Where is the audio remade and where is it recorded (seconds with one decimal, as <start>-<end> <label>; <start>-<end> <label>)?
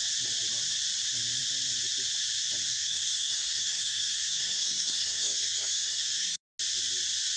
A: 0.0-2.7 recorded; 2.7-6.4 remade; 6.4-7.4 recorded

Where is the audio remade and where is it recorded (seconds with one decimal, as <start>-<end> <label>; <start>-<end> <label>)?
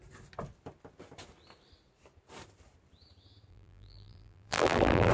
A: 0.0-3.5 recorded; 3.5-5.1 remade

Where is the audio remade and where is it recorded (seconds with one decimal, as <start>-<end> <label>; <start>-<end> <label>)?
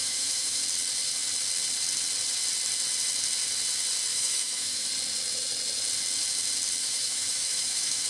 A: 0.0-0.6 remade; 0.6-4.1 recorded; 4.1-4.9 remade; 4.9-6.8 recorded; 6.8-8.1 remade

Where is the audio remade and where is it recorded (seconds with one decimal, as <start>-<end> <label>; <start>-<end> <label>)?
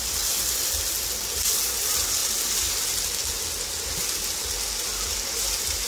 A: 0.0-5.9 recorded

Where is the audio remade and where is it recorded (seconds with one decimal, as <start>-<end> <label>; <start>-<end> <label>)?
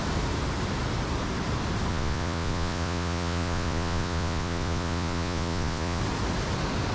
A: 0.0-1.9 recorded; 1.9-6.0 remade; 6.0-6.9 recorded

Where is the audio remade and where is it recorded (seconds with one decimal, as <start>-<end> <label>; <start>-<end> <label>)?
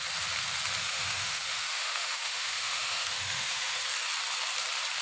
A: 0.0-0.8 recorded; 0.8-3.8 remade; 3.8-5.0 recorded